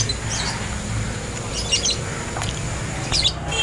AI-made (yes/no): no